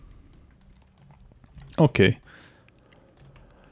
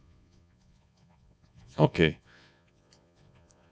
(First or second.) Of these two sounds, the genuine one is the first